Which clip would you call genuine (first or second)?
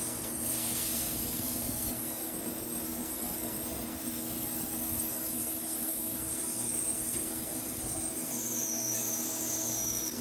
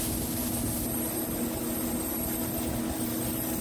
second